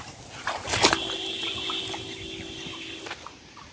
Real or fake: real